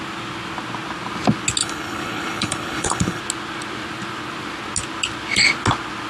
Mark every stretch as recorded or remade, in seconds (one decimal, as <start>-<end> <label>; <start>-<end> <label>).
0.0-1.6 recorded; 1.6-3.2 remade; 3.2-6.1 recorded